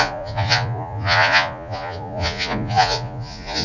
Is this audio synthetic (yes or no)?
yes